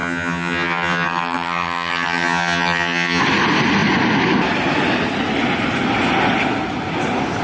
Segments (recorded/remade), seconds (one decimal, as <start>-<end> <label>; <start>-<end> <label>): 0.0-3.2 remade; 3.2-7.4 recorded